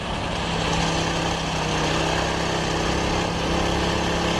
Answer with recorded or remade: recorded